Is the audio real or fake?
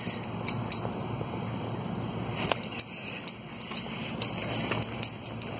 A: real